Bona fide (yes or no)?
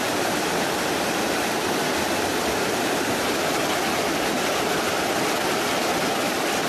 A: yes